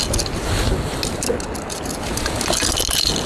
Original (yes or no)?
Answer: yes